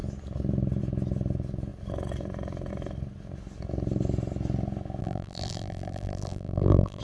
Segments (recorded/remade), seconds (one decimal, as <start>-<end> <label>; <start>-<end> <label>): 0.0-5.0 recorded; 5.0-7.0 remade